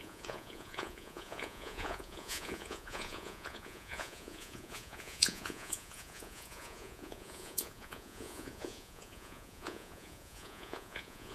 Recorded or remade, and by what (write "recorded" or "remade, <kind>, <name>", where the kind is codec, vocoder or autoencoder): remade, vocoder, Vocos